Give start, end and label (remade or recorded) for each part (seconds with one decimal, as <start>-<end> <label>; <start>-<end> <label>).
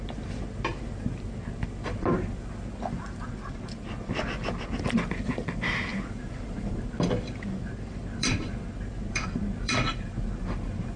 0.0-11.0 remade